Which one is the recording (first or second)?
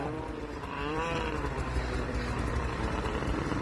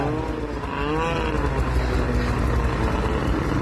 second